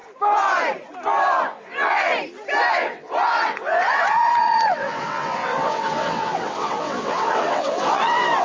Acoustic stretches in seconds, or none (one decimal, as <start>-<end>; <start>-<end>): 0.0-1.4; 2.1-2.7